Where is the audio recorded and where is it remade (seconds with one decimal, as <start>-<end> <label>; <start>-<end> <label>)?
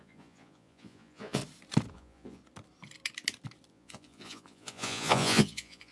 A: 0.0-1.4 remade; 1.4-1.9 recorded; 1.9-2.4 remade; 2.4-3.7 recorded; 3.7-5.9 remade